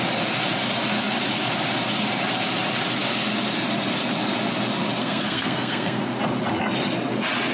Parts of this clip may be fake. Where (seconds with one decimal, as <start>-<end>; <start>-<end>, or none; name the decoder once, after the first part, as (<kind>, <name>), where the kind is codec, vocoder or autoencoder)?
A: 5.0-6.0 (codec, SNAC)